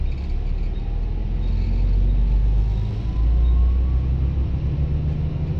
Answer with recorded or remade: recorded